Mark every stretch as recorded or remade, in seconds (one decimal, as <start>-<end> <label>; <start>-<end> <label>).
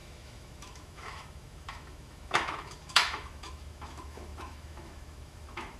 0.0-5.8 remade